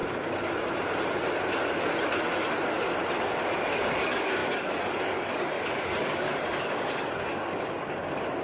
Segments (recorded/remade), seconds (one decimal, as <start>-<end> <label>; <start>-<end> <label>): 0.0-3.7 recorded; 3.7-8.4 remade